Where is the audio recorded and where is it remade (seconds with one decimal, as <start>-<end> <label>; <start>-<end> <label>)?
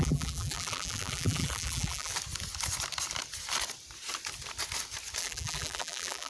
0.0-2.1 remade; 2.1-5.2 recorded; 5.2-6.3 remade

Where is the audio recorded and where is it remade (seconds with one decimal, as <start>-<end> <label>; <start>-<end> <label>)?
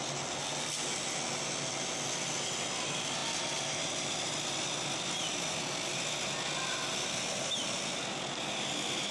0.0-9.1 recorded